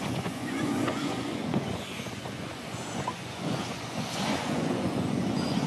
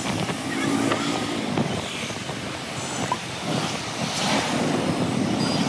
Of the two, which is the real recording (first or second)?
second